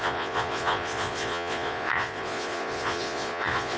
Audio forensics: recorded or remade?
remade